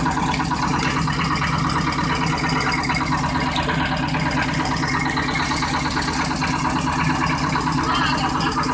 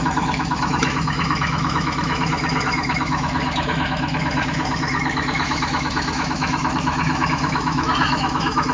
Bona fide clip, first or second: first